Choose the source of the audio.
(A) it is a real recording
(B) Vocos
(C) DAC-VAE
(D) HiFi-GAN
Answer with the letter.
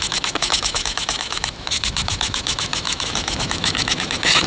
C